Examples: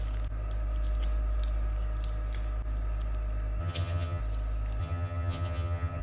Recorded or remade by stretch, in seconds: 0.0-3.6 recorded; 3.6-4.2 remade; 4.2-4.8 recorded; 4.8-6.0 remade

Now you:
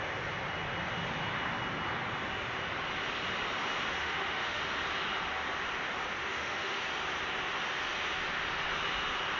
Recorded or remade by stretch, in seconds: 0.0-4.0 recorded; 4.0-4.6 remade; 4.6-6.2 recorded; 6.2-6.8 remade; 6.8-9.4 recorded